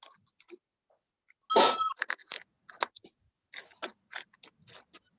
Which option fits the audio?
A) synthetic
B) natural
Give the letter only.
B